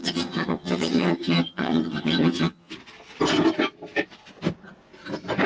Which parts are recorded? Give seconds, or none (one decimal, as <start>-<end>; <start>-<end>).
2.7-5.5